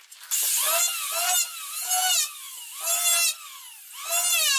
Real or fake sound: real